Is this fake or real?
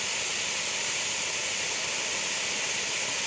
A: real